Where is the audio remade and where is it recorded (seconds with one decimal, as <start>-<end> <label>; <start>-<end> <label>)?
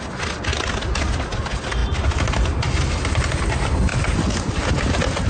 0.0-5.3 recorded